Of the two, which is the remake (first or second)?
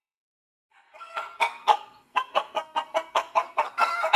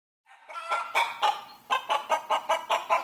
first